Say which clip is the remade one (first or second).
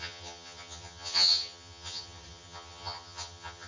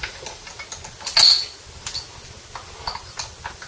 first